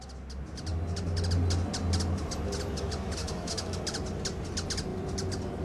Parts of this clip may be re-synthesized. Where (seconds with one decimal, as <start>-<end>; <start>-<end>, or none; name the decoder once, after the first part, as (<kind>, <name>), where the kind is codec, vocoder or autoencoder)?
3.2-3.8 (autoencoder, DAC-VAE)